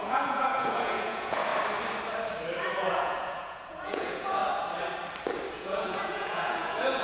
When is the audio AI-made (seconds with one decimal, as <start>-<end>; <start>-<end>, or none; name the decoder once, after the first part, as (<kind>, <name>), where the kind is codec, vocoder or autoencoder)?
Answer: 0.0-1.5 (vocoder, Vocos); 2.9-4.4; 5.5-7.0